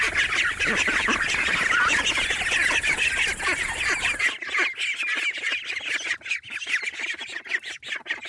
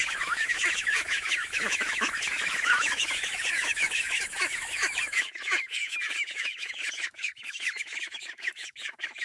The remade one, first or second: second